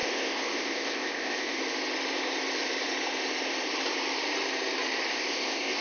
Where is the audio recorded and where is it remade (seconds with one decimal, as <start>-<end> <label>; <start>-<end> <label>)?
0.0-1.6 remade; 1.6-5.1 recorded; 5.1-5.8 remade